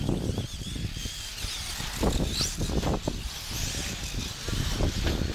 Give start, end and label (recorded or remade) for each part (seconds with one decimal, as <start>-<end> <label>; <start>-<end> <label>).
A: 0.0-5.3 recorded